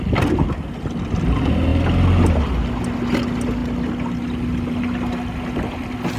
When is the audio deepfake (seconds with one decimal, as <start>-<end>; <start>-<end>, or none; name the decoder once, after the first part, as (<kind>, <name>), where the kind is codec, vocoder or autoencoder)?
none